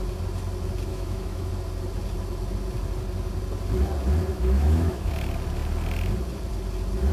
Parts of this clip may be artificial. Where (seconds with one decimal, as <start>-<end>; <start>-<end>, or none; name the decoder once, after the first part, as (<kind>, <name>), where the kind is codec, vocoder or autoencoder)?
0.9-1.5 (autoencoder, DAC-VAE); 4.3-5.1